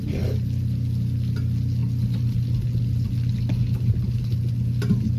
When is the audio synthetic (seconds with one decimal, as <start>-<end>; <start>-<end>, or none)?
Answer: none